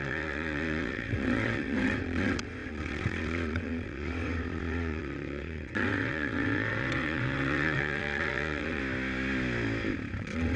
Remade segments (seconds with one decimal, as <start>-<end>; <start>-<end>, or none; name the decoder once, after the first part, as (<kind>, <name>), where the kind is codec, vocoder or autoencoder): 0.0-8.8 (vocoder, WaveNeXt); 10.2-10.6